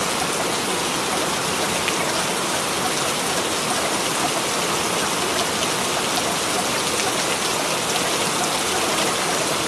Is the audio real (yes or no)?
yes